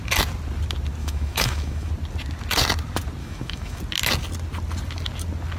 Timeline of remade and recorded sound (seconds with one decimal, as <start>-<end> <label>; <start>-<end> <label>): 0.0-1.0 recorded; 1.0-1.9 remade; 1.9-3.2 recorded; 3.2-3.8 remade; 3.8-5.6 recorded

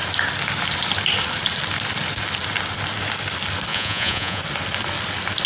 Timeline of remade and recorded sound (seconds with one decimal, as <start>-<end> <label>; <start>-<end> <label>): 0.0-3.7 recorded; 3.7-4.4 remade; 4.4-5.5 recorded